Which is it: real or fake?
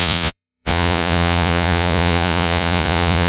fake